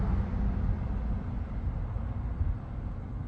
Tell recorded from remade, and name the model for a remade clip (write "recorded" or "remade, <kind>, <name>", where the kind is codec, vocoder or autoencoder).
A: recorded